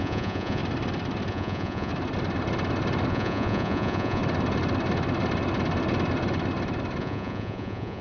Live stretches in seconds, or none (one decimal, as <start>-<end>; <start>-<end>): 0.6-1.3; 1.9-3.1; 4.2-7.0